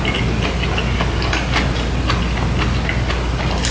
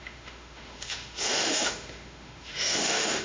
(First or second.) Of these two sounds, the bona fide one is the first